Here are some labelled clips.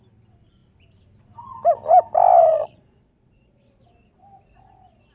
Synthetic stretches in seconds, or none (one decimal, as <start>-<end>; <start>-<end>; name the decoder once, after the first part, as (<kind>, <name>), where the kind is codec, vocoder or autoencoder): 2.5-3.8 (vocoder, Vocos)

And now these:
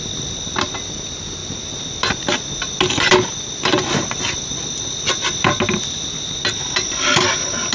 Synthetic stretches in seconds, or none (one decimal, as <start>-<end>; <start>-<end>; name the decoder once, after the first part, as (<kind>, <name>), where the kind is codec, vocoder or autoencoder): none

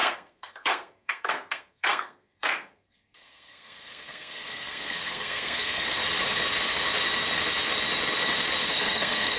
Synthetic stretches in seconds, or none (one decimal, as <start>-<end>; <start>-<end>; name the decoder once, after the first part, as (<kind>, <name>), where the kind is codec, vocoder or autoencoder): 0.0-6.0 (codec, SNAC); 8.7-9.4

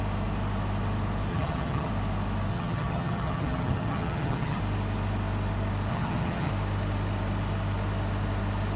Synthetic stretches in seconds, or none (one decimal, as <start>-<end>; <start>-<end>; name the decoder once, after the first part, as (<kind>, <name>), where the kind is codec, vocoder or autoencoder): 1.3-1.9 (vocoder, HiFi-GAN); 2.5-4.6; 5.9-6.5